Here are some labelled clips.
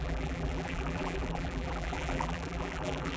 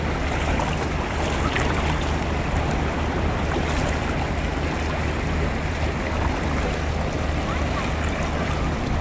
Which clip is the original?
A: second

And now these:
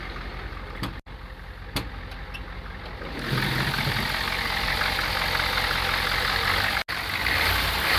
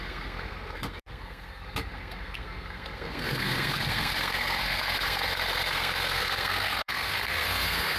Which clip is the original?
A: first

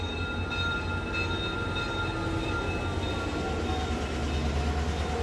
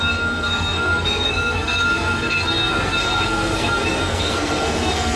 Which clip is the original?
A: first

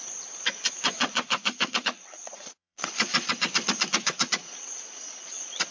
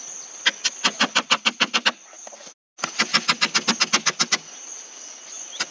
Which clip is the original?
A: second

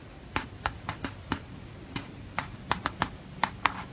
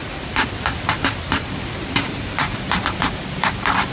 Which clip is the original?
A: first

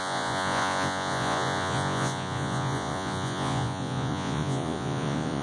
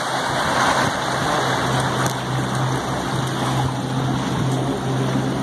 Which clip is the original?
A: second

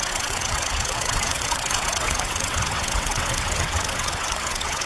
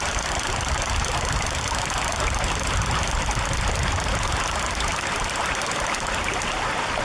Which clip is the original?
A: second